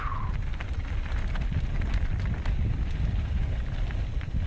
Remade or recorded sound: recorded